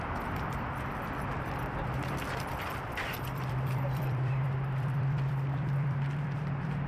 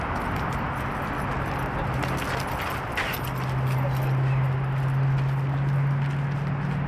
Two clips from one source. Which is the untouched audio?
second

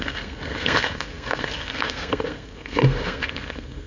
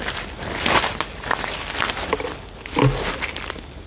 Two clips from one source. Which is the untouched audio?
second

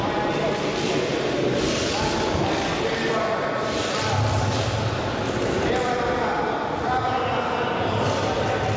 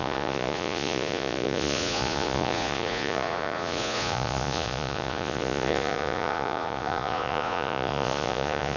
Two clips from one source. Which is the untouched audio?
first